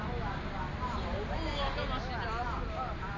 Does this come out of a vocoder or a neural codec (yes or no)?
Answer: no